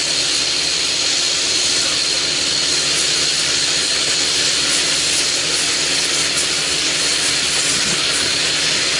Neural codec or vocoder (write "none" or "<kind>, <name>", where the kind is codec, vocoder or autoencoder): none